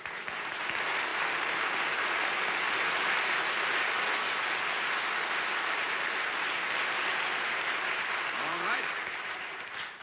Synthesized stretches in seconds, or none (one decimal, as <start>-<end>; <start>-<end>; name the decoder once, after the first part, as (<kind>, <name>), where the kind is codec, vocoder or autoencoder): 0.0-1.1 (vocoder, BigVGAN v2); 5.6-10.0